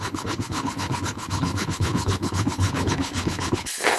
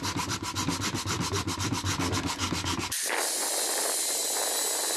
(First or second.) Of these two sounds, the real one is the second